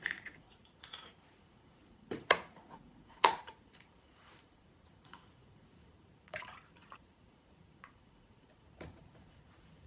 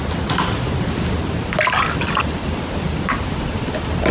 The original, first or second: second